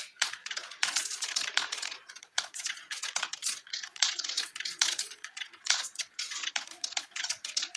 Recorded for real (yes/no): no